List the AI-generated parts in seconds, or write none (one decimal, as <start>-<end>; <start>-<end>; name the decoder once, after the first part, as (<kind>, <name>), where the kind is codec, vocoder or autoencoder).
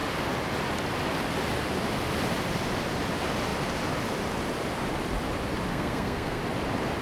5.7-6.4 (codec, SNAC)